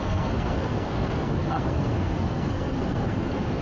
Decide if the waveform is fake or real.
fake